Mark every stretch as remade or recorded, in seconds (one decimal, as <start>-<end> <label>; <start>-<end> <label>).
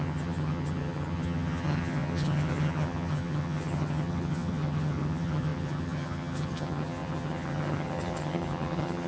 0.0-9.1 remade